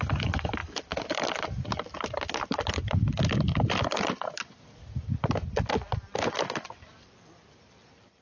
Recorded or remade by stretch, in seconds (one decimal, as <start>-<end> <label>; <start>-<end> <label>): 0.0-8.2 recorded